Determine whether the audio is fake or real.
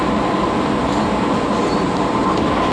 real